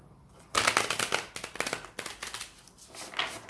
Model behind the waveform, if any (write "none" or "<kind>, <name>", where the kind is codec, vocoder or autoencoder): none